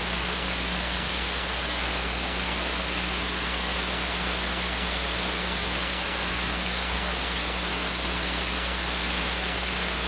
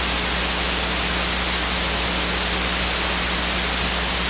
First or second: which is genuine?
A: second